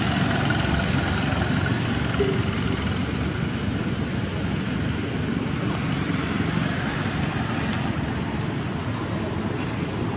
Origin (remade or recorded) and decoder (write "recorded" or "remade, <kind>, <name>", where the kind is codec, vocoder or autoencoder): recorded